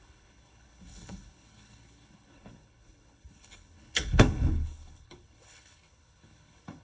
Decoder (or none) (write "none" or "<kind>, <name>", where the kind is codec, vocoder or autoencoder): codec, HILCodec